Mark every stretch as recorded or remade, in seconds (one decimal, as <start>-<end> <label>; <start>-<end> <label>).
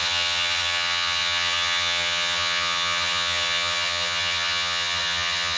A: 0.0-5.6 remade